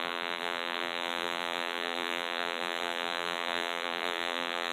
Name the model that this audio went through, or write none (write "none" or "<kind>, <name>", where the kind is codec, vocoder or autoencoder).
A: vocoder, BigVGAN v2